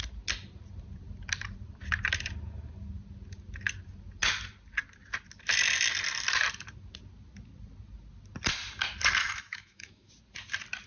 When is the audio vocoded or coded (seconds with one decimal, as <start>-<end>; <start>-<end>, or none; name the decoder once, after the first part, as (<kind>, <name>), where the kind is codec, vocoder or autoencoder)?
9.2-10.1 (autoencoder, DAC-VAE)